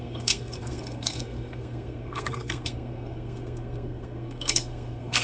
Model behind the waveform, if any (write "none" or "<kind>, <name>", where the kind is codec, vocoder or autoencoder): codec, SNAC